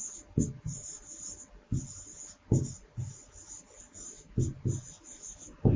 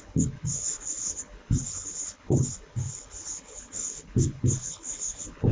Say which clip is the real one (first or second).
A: first